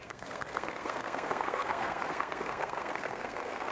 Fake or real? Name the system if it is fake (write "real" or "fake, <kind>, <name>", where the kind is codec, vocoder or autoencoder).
fake, codec, SNAC